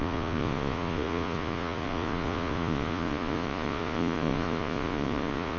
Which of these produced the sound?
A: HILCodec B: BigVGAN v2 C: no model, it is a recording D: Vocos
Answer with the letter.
D